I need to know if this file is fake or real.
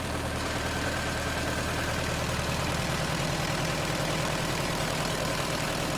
fake